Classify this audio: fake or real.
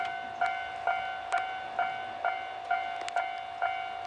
real